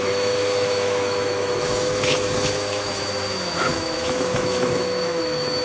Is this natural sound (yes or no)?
no